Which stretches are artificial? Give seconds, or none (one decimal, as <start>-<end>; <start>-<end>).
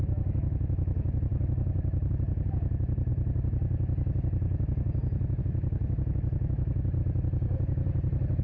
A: 0.0-3.1; 5.4-7.0